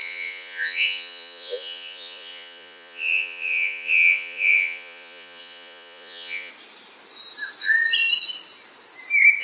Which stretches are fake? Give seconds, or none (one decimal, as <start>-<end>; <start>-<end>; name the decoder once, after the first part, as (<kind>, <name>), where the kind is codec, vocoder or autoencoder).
0.0-6.5 (vocoder, Vocos)